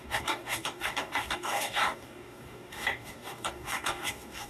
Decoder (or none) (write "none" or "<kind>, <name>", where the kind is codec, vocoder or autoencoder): codec, DAC